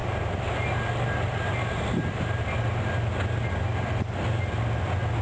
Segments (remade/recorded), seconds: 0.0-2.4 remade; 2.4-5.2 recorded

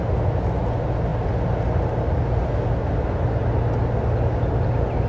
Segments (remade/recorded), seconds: 0.0-5.1 recorded

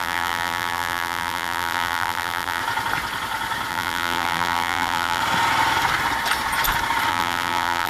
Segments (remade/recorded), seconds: 0.0-2.6 remade; 2.6-3.7 recorded; 3.7-5.2 remade; 5.2-7.1 recorded; 7.1-7.9 remade